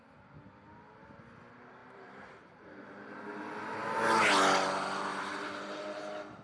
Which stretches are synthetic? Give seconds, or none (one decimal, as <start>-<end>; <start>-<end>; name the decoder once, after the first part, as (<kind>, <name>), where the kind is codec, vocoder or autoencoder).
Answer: 1.8-2.9 (vocoder, BigVGAN v2); 5.1-6.0